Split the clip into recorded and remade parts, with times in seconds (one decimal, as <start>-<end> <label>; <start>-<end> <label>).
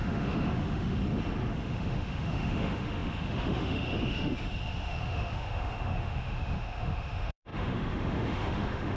0.0-1.0 remade; 1.0-1.5 recorded; 1.5-9.0 remade